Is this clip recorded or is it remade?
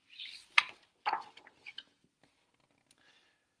recorded